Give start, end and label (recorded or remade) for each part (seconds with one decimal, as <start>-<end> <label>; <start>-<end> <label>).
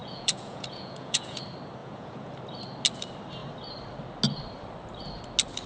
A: 0.0-1.4 remade; 1.4-1.8 recorded; 1.8-2.3 remade; 2.3-5.7 recorded